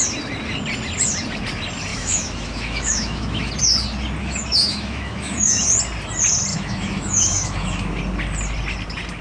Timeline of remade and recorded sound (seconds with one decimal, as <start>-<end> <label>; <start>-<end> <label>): 0.0-1.9 recorded; 1.9-3.5 remade; 3.5-4.2 recorded; 4.2-5.6 remade; 5.6-6.5 recorded; 6.5-8.0 remade; 8.0-9.2 recorded

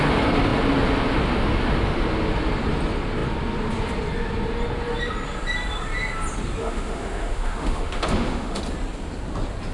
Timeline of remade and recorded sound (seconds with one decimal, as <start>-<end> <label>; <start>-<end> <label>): 0.0-6.6 recorded; 6.6-8.6 remade; 8.6-9.7 recorded

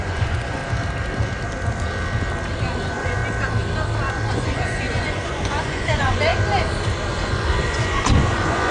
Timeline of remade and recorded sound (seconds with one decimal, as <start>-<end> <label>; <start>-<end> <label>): 0.0-0.6 remade; 0.6-2.8 recorded; 2.8-3.2 remade; 3.2-4.3 recorded; 4.3-6.3 remade; 6.3-7.1 recorded; 7.1-8.7 remade

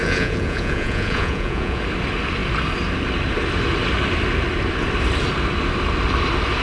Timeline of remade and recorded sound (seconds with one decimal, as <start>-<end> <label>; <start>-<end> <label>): 0.0-1.8 remade; 1.8-6.6 recorded

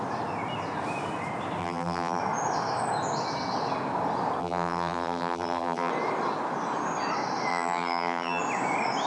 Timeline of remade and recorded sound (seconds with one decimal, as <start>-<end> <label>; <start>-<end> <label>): 0.0-1.6 recorded; 1.6-2.2 remade; 2.2-4.4 recorded; 4.4-5.9 remade; 5.9-7.5 recorded; 7.5-8.4 remade; 8.4-9.1 recorded

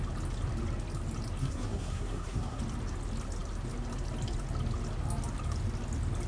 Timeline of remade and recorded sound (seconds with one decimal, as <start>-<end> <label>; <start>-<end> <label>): 0.0-1.4 recorded; 1.4-2.6 remade; 2.6-6.3 recorded